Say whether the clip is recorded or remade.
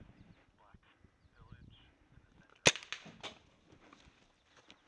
recorded